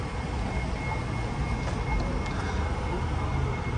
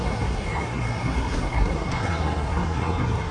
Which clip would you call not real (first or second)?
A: second